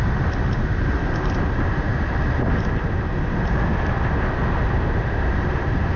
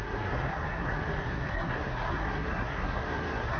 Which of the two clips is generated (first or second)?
second